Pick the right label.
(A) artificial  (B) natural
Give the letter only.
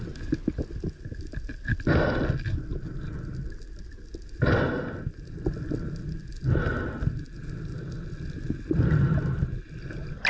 B